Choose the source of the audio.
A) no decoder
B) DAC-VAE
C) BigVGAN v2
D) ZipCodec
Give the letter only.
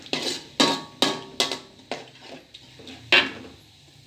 A